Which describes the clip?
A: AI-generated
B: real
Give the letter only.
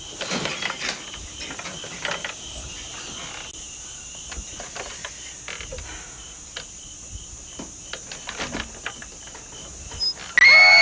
B